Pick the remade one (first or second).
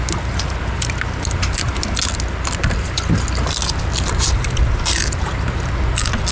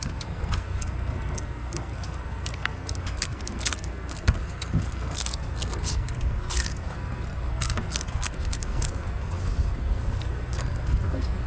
second